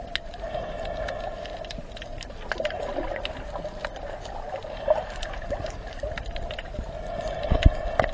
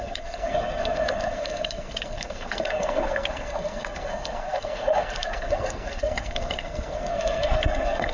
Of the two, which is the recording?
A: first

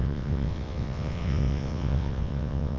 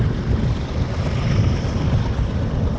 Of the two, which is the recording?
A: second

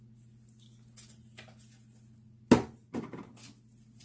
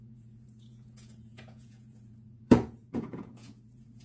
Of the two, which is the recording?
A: first